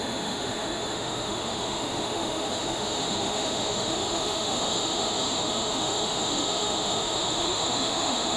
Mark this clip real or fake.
fake